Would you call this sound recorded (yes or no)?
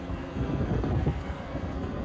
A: no